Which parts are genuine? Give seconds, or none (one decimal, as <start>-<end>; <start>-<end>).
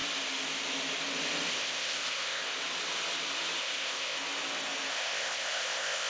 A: 0.0-1.5; 2.4-3.6; 4.2-4.9